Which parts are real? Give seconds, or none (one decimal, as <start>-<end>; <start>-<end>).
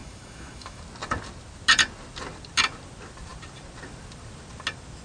0.8-5.0